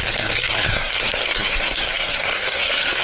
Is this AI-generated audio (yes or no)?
yes